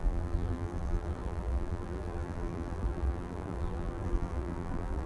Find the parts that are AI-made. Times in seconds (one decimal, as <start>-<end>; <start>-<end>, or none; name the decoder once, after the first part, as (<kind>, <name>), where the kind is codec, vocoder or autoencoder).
0.0-5.1 (vocoder, BigVGAN v2)